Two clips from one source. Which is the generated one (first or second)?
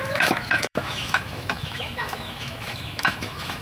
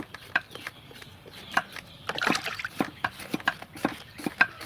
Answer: first